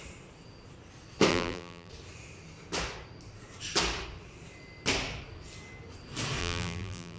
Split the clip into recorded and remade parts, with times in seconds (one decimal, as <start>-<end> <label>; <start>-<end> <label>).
0.0-1.3 recorded; 1.3-1.9 remade; 1.9-6.4 recorded; 6.4-7.2 remade